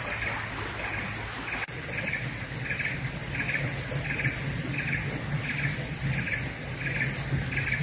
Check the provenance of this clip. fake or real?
real